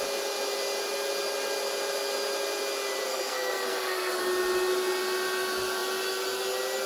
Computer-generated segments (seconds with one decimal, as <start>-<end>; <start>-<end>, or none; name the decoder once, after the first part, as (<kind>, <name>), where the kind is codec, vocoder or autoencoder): 3.1-4.2 (codec, SNAC)